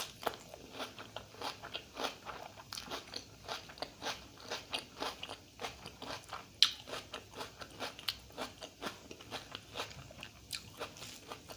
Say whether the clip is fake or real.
real